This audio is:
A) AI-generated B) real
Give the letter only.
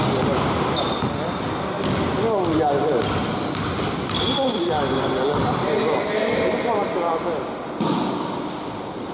B